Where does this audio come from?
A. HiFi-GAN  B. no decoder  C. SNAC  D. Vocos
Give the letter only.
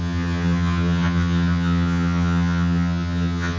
A